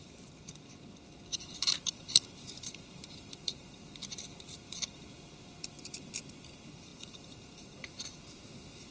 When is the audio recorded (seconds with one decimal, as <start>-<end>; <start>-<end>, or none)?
0.5-1.3; 6.1-6.9; 8.2-8.9